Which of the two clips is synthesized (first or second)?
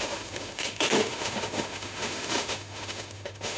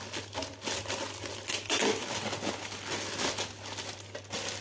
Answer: first